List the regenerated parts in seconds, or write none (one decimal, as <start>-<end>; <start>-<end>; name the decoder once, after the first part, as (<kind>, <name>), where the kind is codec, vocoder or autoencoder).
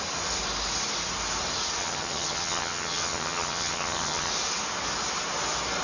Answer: 1.8-4.3 (vocoder, HiFi-GAN)